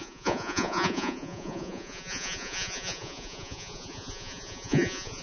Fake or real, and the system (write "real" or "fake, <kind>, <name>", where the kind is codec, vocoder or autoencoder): fake, vocoder, Vocos